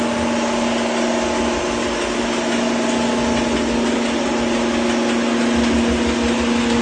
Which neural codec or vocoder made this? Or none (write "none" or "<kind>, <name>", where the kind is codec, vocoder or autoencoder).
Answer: none